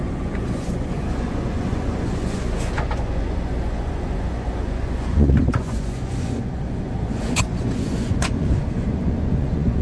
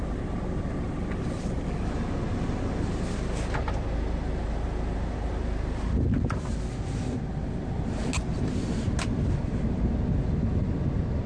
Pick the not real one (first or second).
first